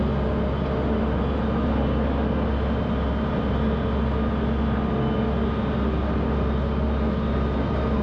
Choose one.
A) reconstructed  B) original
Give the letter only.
B